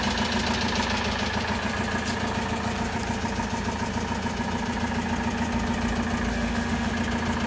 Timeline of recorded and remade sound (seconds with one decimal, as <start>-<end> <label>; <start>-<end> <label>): 0.0-6.3 recorded; 6.3-6.9 remade; 6.9-7.5 recorded

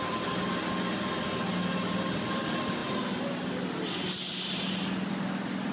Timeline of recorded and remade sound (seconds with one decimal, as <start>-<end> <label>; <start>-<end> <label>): 0.0-5.7 recorded